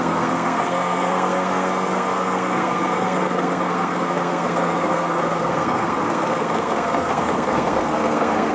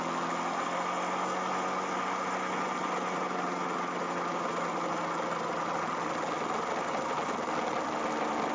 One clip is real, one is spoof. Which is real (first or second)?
second